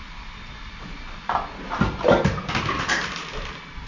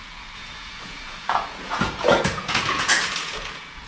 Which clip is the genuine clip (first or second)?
first